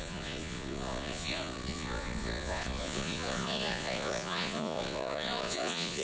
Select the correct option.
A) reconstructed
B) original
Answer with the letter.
A